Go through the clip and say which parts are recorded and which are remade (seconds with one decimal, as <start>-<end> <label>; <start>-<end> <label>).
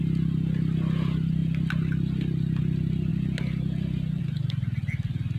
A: 0.0-5.4 recorded